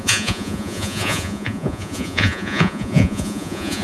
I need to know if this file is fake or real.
fake